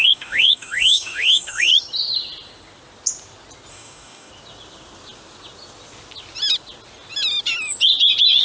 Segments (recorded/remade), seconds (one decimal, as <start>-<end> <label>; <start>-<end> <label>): 0.0-1.7 remade; 1.7-3.7 recorded; 3.7-4.3 remade; 4.3-8.4 recorded